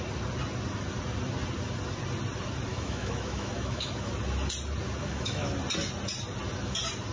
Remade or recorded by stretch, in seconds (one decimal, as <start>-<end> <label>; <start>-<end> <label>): 0.0-2.7 recorded; 2.7-4.1 remade; 4.1-5.0 recorded; 5.0-5.5 remade; 5.5-7.1 recorded